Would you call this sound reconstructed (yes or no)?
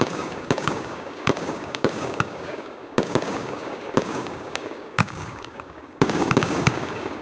yes